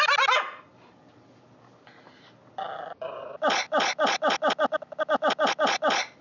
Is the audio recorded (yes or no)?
yes